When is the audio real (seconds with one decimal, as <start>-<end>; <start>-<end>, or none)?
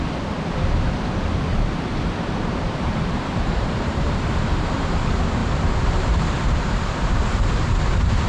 0.0-1.5; 4.0-8.3